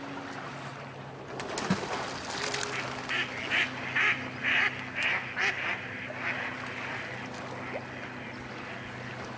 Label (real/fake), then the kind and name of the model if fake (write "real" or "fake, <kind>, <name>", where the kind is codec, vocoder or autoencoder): real